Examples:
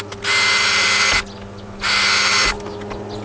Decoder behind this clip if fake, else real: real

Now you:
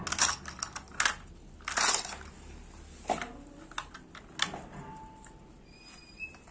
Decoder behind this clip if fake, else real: real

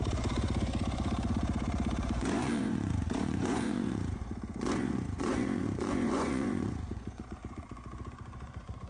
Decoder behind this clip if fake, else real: fake, vocoder, Vocos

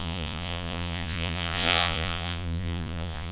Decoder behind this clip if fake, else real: fake, vocoder, Vocos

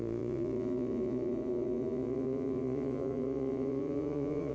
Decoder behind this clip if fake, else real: fake, vocoder, Vocos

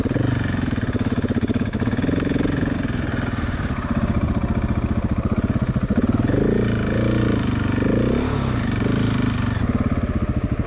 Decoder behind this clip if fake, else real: real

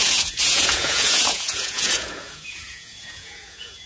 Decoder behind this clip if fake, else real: fake, vocoder, Vocos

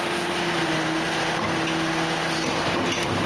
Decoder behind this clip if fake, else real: real